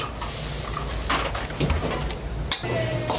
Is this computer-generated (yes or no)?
no